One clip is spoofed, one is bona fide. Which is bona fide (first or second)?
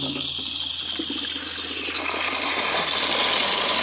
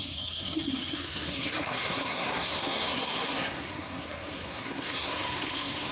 first